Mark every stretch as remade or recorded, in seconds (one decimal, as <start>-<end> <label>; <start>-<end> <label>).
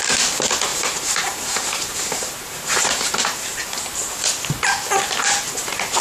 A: 0.0-0.7 recorded; 0.7-3.7 remade; 3.7-6.0 recorded